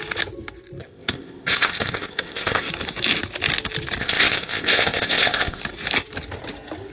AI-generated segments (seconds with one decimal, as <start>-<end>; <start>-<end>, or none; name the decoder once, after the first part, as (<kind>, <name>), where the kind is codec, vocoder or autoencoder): 0.8-2.7 (codec, ZipCodec); 4.0-5.6